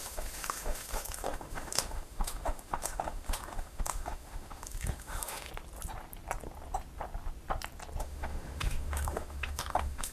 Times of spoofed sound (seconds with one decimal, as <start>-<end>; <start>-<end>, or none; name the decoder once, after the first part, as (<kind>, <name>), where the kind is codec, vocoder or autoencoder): 0.0-5.5 (autoencoder, DAC-VAE); 8.0-10.1